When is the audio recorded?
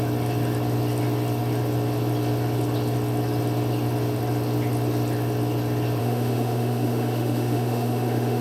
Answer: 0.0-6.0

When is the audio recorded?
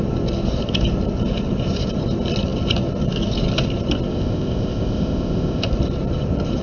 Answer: 0.0-4.1; 5.7-6.6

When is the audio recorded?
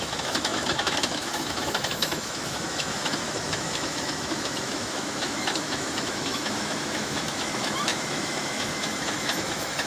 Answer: none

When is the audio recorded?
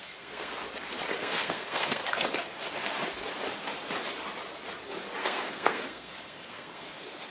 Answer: 0.5-1.2; 2.0-5.2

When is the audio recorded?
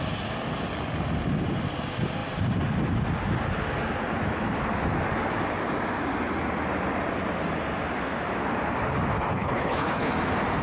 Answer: 0.0-9.3; 10.1-10.6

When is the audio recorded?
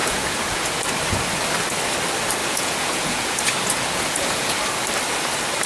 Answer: 0.8-2.4; 4.6-5.7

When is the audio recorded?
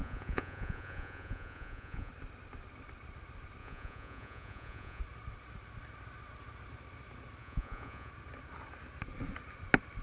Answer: 2.1-3.6; 5.0-7.4; 8.1-10.0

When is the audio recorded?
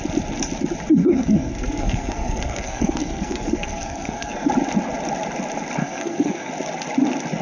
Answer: 0.0-1.0; 4.5-5.8; 6.5-7.4